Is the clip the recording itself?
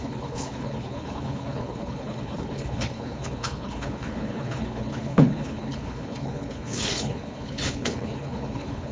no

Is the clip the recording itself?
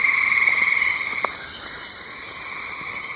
yes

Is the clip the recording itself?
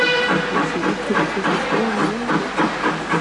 yes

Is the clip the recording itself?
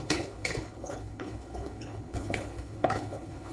no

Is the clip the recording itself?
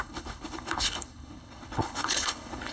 no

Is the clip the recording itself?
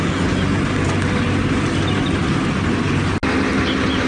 yes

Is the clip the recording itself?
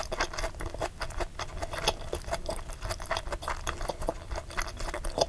yes